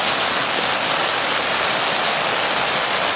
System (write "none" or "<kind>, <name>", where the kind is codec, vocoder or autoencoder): none